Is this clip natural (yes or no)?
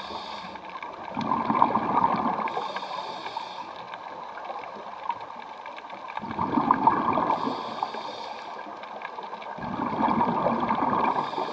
yes